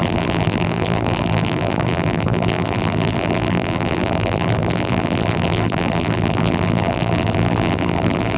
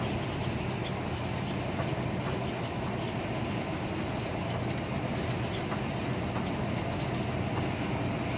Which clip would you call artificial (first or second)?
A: first